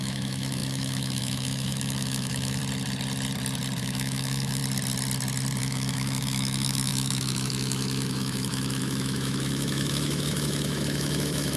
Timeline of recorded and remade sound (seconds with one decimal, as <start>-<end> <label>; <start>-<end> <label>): 0.0-2.6 remade; 2.6-3.8 recorded; 3.8-4.6 remade; 4.6-5.6 recorded; 5.6-11.6 remade